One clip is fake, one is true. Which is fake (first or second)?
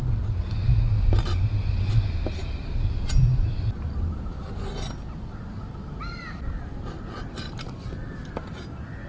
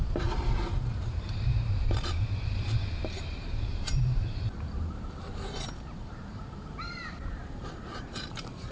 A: second